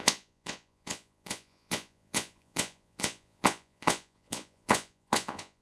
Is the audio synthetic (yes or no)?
yes